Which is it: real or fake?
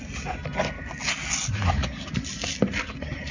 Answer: real